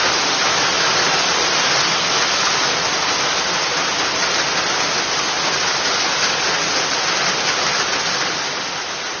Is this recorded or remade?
recorded